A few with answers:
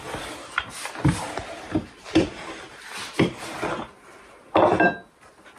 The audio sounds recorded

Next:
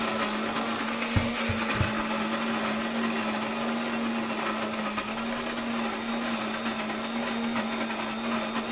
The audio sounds recorded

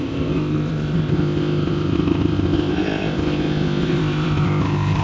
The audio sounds remade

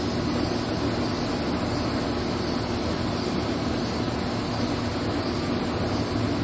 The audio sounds recorded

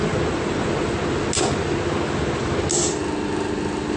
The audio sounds recorded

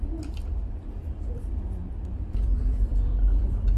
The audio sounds remade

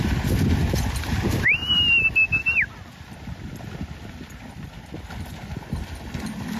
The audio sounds recorded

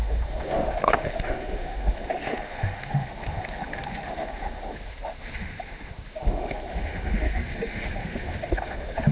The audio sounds remade